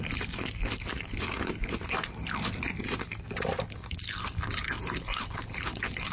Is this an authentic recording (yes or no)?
yes